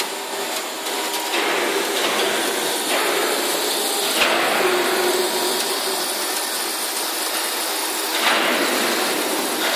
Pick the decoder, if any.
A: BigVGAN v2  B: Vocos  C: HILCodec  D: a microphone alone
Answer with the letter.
D